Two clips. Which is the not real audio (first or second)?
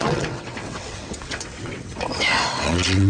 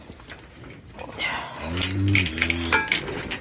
first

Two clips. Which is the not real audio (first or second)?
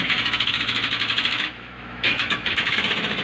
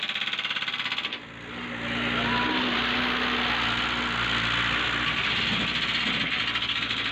first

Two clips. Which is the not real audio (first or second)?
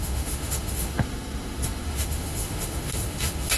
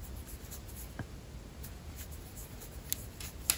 first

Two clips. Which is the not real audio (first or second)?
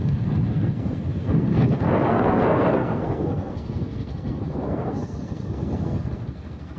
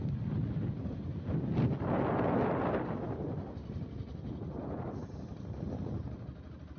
first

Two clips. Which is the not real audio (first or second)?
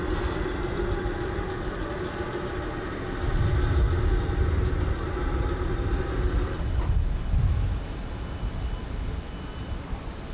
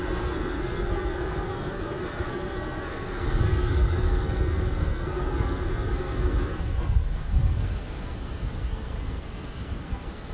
second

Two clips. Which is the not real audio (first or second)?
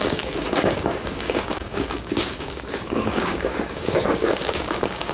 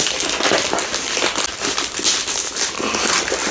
first